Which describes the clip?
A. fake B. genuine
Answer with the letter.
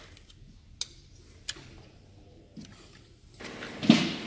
B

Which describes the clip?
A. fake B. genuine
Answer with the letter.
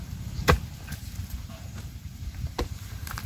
A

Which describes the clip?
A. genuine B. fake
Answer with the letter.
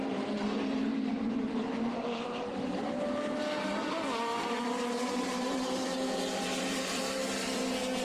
B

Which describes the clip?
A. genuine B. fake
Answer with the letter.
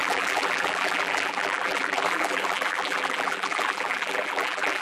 B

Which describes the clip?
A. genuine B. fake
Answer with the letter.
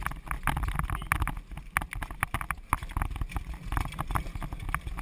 A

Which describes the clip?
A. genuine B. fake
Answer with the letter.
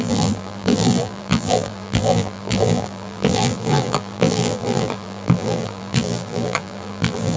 B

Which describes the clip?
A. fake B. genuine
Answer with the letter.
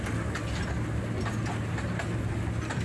B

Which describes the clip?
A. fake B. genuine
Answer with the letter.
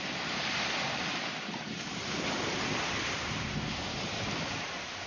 A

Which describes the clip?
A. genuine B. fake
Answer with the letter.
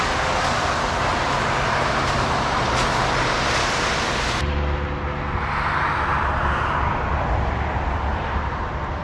A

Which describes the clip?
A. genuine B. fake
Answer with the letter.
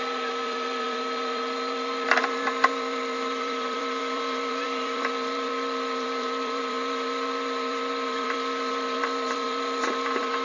B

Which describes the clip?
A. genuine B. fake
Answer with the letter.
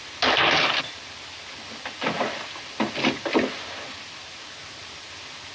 A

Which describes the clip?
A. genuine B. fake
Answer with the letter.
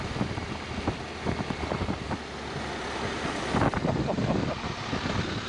A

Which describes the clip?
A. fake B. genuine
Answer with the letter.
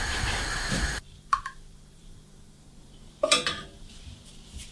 A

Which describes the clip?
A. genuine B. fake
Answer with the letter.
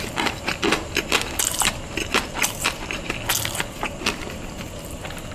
A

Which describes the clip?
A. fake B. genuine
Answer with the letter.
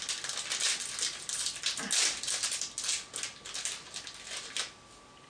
B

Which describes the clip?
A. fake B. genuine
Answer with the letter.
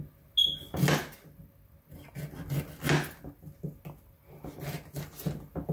B